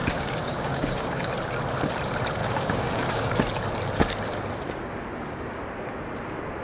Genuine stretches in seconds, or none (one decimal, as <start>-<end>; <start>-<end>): 1.3-2.4; 3.4-4.8; 5.6-6.6